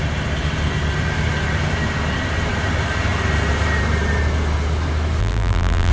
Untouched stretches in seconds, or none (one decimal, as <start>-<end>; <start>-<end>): 0.0-5.2